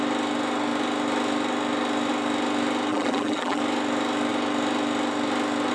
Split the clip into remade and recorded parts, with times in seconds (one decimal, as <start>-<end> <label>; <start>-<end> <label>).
0.0-2.9 recorded; 2.9-3.6 remade; 3.6-5.7 recorded